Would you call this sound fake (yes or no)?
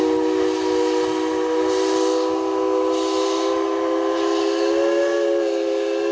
no